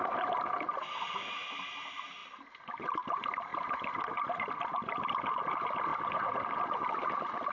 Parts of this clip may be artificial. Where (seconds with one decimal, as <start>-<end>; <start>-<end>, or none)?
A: none